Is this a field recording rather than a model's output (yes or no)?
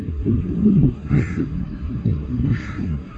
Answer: no